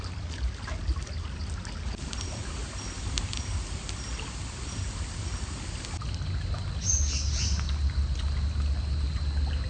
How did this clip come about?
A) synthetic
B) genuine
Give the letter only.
B